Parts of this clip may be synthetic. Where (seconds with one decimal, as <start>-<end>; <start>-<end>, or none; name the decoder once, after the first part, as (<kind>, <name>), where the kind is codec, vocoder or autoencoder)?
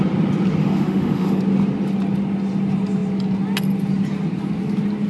0.6-1.4 (autoencoder, DAC-VAE)